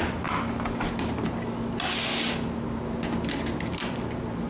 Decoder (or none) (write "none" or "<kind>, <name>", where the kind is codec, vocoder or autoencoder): none